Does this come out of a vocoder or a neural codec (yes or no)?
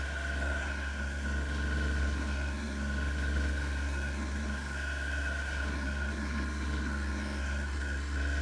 yes